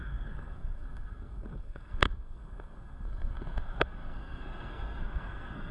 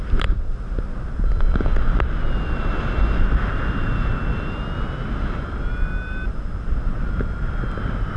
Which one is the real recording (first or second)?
second